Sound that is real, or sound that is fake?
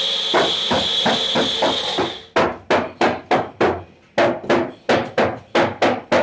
real